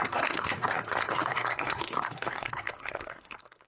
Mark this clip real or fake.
fake